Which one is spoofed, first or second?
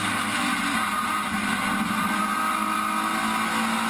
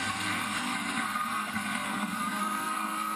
second